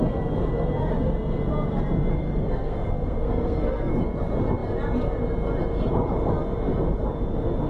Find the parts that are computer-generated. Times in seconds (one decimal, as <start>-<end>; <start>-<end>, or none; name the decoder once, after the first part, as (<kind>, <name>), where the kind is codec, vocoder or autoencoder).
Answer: 2.1-3.9 (codec, SNAC)